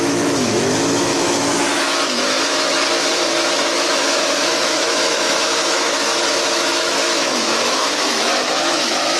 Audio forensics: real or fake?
fake